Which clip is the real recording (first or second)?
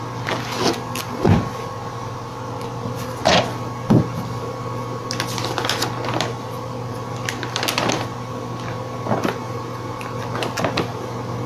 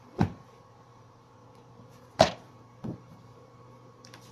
first